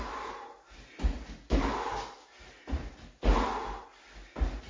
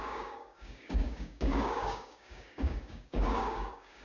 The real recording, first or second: first